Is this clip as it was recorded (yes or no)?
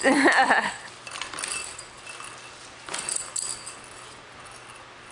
yes